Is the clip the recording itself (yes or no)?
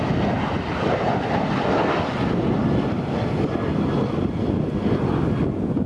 yes